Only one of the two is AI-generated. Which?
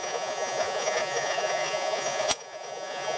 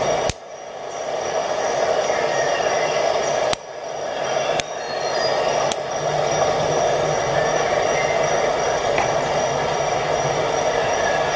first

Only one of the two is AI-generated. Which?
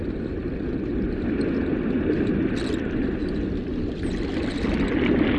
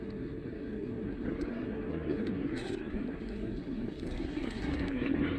second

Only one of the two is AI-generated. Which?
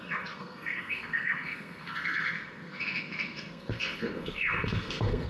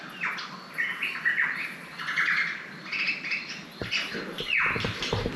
first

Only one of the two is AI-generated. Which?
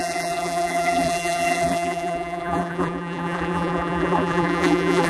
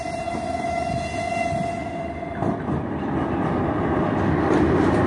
first